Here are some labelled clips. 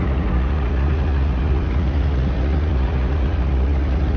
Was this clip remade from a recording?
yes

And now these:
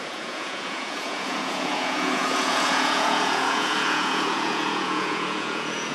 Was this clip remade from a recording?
yes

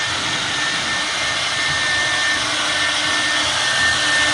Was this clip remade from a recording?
no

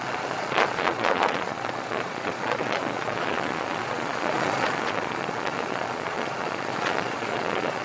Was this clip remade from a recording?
yes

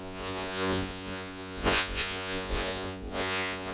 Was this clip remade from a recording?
yes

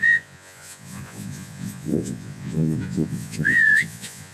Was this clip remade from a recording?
yes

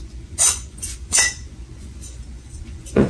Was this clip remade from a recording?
yes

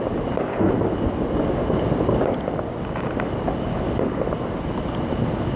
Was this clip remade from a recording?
no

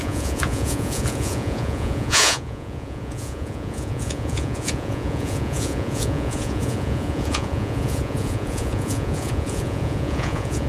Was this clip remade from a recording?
yes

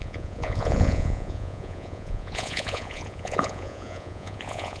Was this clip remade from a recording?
yes